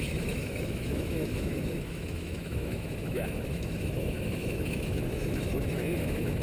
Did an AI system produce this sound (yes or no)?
yes